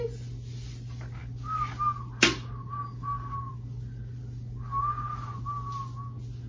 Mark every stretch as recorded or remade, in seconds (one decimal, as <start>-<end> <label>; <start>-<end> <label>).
0.0-6.5 recorded